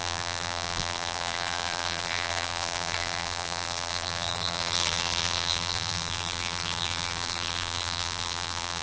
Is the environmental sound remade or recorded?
remade